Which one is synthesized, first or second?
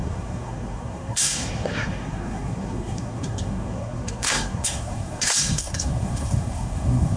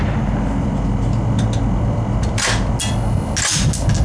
first